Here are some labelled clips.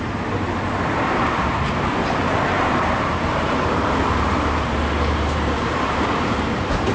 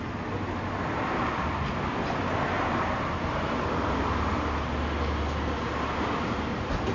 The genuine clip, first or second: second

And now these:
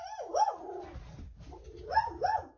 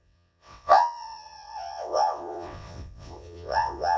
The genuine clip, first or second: first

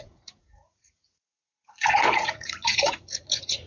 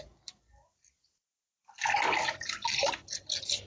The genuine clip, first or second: second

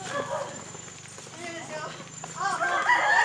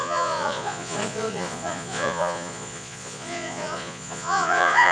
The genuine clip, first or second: first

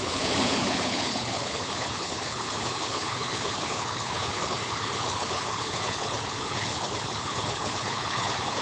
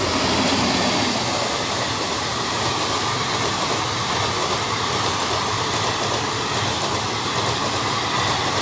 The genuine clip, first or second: second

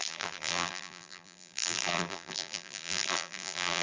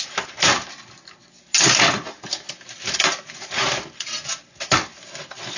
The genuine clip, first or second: second